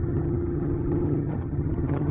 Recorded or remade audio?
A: remade